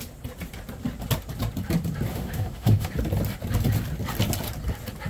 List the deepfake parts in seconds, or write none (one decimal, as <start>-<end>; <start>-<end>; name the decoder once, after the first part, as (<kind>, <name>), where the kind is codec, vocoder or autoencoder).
2.1-2.9 (autoencoder, DAC-VAE)